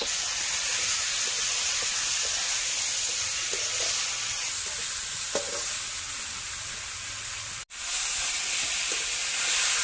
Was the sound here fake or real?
real